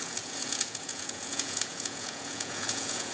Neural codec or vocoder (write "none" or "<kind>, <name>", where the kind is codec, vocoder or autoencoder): vocoder, Vocos